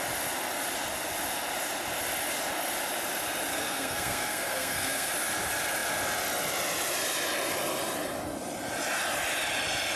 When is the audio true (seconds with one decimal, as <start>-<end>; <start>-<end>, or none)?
0.0-3.5; 5.1-10.0

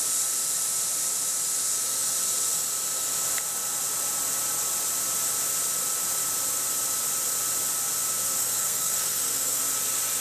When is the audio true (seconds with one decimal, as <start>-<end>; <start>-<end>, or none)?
0.0-8.4; 9.6-10.2

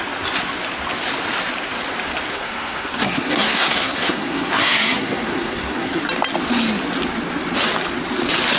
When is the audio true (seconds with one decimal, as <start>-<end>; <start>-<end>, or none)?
0.0-2.3; 6.0-8.6